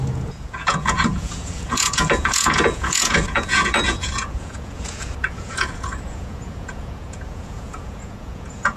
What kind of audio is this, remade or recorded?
remade